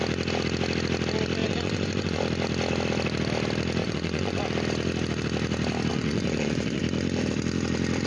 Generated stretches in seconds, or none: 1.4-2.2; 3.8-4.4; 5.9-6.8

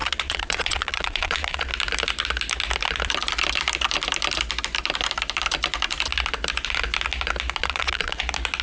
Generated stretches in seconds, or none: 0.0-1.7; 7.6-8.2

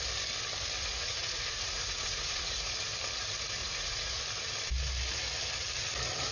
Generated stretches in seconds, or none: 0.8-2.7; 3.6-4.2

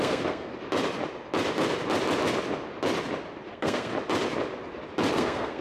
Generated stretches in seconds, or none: 0.0-0.5; 3.5-3.9; 5.1-5.6

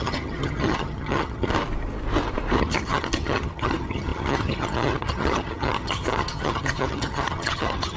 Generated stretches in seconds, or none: 0.0-1.5; 2.6-8.0

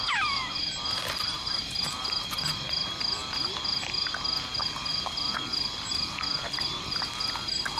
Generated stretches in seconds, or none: none

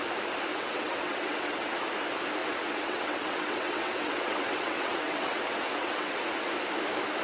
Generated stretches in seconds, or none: 0.5-1.8; 2.4-6.2